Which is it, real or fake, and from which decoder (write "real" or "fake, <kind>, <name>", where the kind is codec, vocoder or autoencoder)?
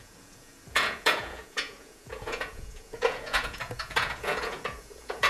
fake, vocoder, Vocos